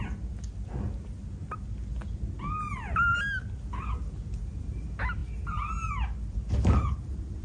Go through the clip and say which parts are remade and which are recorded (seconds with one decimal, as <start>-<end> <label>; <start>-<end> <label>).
0.0-7.4 recorded